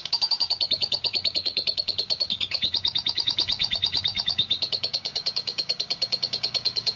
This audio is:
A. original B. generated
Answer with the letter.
B